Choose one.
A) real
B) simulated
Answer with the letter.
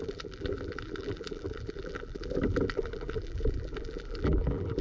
B